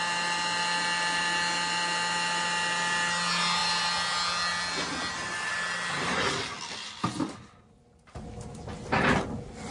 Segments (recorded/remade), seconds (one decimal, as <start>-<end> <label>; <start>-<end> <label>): 0.0-9.7 recorded